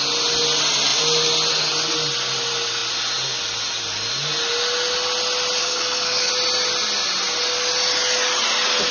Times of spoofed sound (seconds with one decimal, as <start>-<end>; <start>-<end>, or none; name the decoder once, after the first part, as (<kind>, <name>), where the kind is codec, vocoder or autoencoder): 5.6-6.3 (codec, SNAC)